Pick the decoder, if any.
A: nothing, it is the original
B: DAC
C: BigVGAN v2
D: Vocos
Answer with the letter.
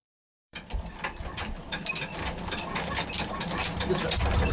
C